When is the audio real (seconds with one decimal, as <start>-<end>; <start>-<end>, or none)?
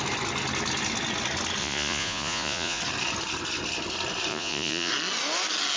0.0-1.6; 2.8-4.3; 4.9-5.8